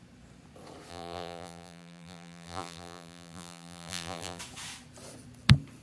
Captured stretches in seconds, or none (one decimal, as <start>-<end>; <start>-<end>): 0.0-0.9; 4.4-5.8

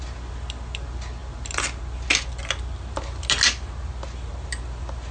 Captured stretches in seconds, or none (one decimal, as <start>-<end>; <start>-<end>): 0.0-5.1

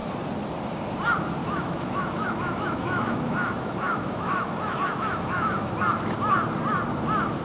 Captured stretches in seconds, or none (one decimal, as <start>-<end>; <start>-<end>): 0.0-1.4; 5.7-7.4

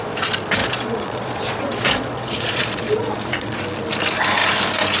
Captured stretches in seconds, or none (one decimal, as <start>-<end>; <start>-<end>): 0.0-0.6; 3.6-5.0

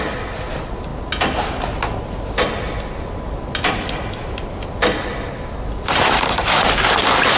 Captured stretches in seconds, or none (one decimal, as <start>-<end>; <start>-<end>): 0.0-7.4

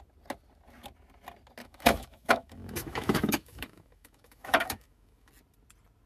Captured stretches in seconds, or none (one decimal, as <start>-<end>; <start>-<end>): 0.0-1.6; 5.3-6.1